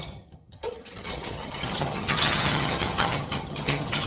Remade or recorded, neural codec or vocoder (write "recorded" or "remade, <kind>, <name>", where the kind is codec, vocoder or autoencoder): remade, vocoder, HiFi-GAN